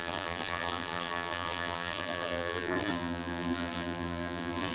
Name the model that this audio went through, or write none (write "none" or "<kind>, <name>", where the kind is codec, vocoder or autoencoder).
vocoder, BigVGAN v2